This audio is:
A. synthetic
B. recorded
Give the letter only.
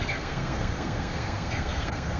A